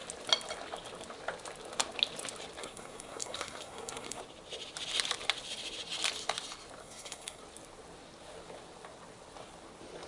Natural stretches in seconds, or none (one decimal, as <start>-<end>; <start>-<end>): 0.0-2.6; 4.2-6.8; 7.4-10.1